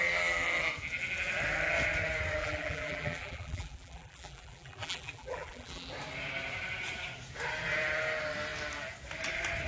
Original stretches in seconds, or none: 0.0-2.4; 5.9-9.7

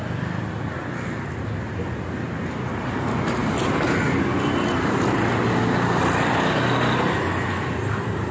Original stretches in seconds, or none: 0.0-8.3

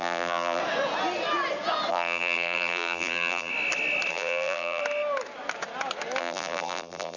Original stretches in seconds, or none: 0.6-1.9; 3.5-4.1; 4.8-6.2